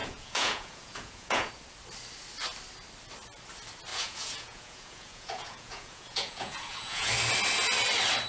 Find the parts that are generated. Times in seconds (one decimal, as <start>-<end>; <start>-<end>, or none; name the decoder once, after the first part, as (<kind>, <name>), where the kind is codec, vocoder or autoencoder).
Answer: 0.0-1.5 (vocoder, Vocos); 3.9-7.1